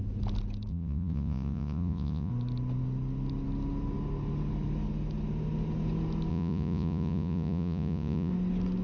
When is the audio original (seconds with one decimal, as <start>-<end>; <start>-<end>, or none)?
0.0-0.7; 2.3-6.3; 8.3-8.8